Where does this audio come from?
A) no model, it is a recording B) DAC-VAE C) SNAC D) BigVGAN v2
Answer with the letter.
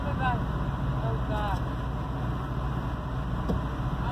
A